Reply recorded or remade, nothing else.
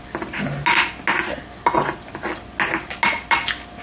recorded